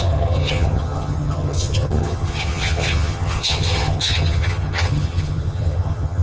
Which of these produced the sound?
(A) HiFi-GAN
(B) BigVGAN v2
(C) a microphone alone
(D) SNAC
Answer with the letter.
A